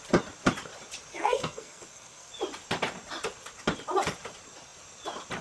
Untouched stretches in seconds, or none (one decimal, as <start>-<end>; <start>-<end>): 0.0-1.1; 2.3-5.4